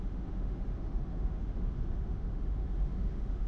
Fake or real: fake